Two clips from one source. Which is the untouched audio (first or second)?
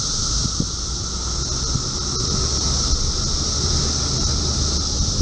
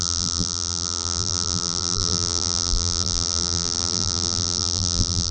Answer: first